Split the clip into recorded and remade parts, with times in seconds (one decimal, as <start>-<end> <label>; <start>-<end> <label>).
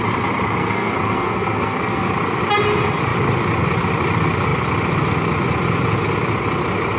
0.0-0.6 recorded; 0.6-2.1 remade; 2.1-7.0 recorded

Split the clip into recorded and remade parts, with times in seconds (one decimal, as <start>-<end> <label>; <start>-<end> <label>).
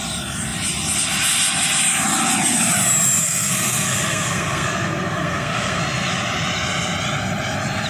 0.0-3.2 recorded; 3.2-5.8 remade; 5.8-7.9 recorded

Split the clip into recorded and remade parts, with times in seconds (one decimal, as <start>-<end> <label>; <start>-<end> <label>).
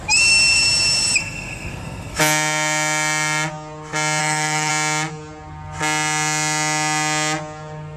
0.0-1.2 recorded; 1.2-2.2 remade; 2.2-4.2 recorded; 4.2-4.7 remade; 4.7-8.0 recorded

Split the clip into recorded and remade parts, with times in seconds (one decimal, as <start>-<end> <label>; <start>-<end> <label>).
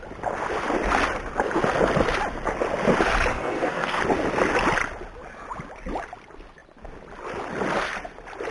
0.0-3.3 recorded; 3.3-4.0 remade; 4.0-8.5 recorded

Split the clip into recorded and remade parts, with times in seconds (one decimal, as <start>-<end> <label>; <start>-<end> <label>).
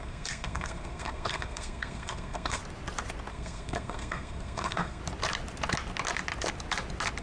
0.0-2.6 remade; 2.6-3.3 recorded; 3.3-5.0 remade; 5.0-7.2 recorded